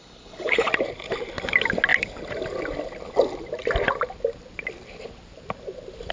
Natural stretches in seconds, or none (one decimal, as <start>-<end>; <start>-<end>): 0.7-6.1